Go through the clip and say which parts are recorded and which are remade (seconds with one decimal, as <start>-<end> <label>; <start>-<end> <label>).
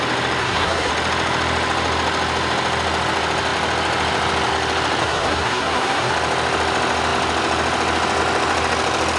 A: 0.0-0.4 recorded; 0.4-0.9 remade; 0.9-5.0 recorded; 5.0-6.1 remade; 6.1-9.2 recorded